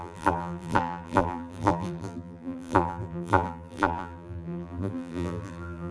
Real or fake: fake